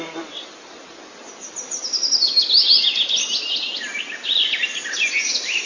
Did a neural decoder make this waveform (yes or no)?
no